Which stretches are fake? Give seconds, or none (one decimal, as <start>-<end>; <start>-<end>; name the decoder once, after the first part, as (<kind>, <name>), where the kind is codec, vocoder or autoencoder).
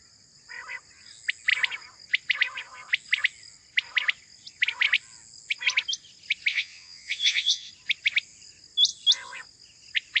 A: 6.5-7.7 (vocoder, WaveNeXt)